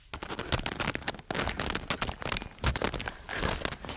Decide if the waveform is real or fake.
real